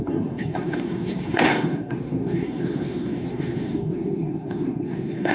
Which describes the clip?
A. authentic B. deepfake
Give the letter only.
B